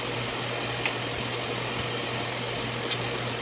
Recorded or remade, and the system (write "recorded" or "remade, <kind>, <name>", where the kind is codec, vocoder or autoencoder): recorded